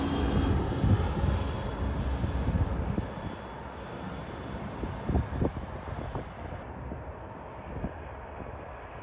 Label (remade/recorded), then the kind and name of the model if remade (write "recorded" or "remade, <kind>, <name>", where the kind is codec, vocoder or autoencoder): recorded